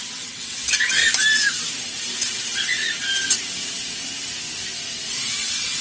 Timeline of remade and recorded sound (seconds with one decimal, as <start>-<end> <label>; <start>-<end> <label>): 0.0-1.0 remade; 1.0-2.2 recorded; 2.2-2.8 remade; 2.8-5.1 recorded; 5.1-5.8 remade